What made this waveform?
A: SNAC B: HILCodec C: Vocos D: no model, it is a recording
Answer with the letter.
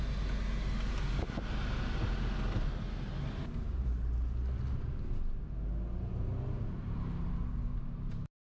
D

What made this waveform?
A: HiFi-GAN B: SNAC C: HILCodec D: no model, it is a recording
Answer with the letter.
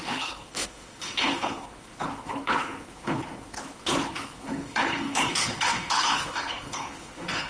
C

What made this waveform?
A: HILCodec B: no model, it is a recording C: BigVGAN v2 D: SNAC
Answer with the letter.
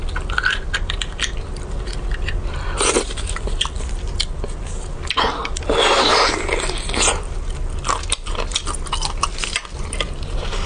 B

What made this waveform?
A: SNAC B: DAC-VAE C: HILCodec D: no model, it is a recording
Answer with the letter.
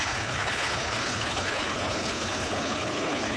C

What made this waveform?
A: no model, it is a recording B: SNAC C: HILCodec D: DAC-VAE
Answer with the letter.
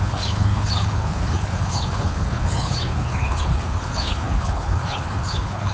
C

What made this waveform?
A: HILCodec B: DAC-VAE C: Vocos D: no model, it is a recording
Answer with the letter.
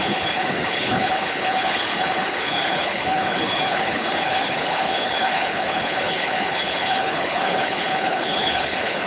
A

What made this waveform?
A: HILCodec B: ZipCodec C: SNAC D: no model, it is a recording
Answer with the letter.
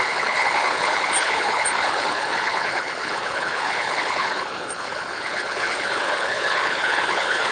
A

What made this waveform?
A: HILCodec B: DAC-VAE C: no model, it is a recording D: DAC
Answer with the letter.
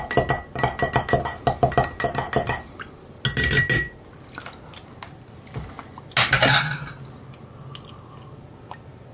C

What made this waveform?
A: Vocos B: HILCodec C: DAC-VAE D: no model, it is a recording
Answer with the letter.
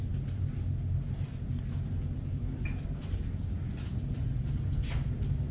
D